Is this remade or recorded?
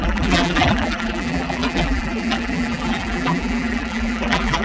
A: remade